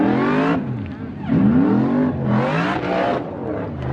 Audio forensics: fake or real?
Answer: real